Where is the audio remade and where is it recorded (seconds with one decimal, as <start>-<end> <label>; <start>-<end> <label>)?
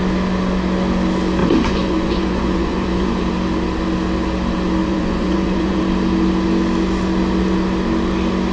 0.0-1.4 recorded; 1.4-3.2 remade; 3.2-4.8 recorded; 4.8-5.8 remade; 5.8-8.5 recorded